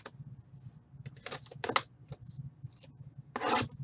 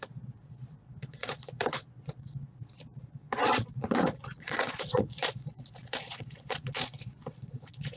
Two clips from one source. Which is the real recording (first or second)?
first